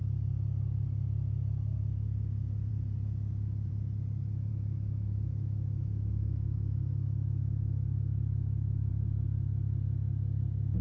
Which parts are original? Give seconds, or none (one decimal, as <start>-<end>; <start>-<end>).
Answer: 0.0-4.5; 8.9-10.8